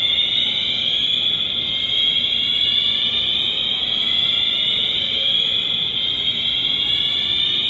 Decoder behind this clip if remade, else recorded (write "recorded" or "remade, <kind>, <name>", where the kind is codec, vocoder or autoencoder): recorded